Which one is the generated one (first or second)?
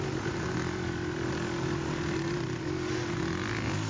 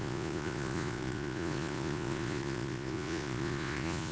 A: second